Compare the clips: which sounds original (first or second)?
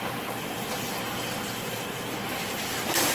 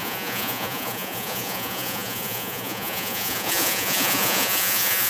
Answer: first